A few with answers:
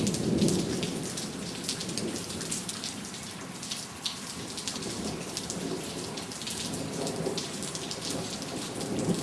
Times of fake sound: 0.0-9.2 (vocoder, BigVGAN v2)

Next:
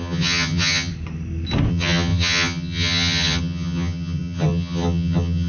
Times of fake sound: 0.0-0.9 (vocoder, HiFi-GAN); 1.7-5.5

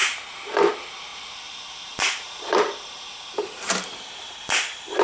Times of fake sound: 0.0-5.0 (vocoder, BigVGAN v2)

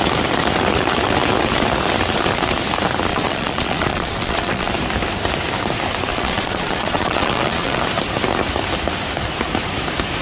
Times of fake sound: 3.1-4.7 (vocoder, Vocos); 6.1-7.8

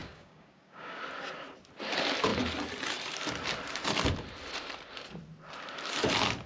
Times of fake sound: 0.0-1.0 (codec, DAC)

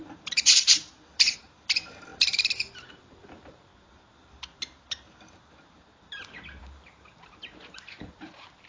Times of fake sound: 0.0-3.7 (vocoder, BigVGAN v2); 6.6-8.7

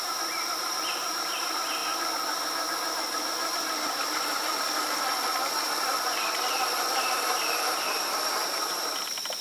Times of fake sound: 0.0-1.8 (vocoder, BigVGAN v2); 7.0-9.4

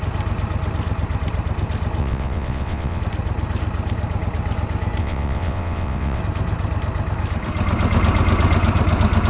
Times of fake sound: 2.0-3.0 (vocoder, WaveNeXt); 5.0-6.2